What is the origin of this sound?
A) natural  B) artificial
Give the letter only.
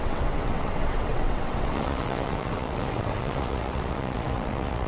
B